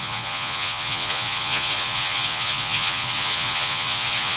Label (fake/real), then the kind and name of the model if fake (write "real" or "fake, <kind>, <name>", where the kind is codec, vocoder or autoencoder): fake, vocoder, Vocos